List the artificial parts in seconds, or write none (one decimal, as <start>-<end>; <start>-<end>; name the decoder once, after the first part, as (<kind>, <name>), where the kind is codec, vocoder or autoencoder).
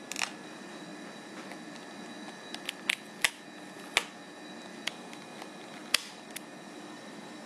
none